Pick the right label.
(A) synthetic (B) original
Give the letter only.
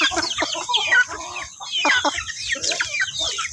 B